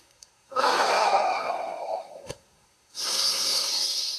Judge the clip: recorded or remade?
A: remade